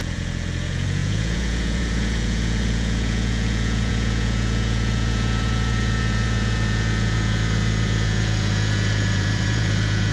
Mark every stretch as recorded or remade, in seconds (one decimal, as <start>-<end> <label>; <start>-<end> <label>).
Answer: 0.0-10.1 remade